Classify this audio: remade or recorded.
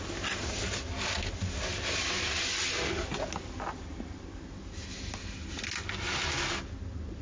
recorded